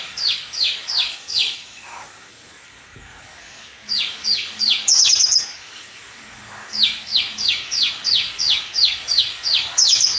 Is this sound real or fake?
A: fake